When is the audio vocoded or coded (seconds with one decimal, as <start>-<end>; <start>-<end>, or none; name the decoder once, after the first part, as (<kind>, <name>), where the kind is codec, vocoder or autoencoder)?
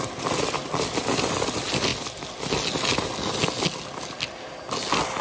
none